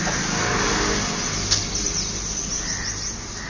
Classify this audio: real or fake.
real